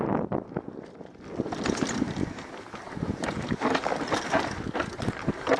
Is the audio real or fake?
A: real